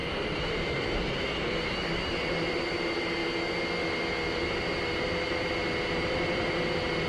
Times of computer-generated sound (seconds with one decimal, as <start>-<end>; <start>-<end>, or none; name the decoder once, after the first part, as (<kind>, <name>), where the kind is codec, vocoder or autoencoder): 0.0-1.5 (vocoder, BigVGAN v2)